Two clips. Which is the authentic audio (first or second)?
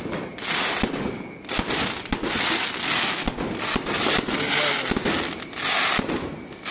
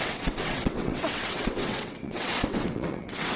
first